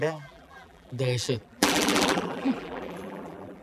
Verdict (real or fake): fake